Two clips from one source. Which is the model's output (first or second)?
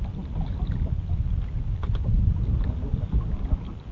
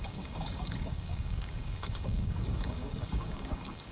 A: second